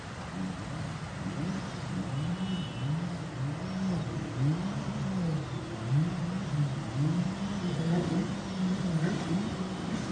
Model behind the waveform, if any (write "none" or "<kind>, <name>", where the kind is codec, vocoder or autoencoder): none